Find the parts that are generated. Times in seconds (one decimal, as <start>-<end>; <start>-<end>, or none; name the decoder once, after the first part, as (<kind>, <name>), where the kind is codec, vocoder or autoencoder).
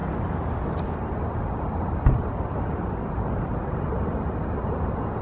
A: none